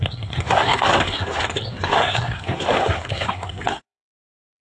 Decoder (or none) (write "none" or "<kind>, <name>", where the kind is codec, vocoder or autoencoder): codec, SNAC